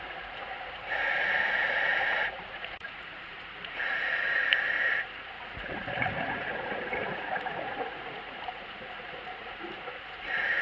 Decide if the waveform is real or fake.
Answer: fake